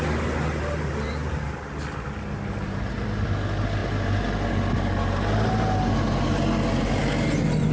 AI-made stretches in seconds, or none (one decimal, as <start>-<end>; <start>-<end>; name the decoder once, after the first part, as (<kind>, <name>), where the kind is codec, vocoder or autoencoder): none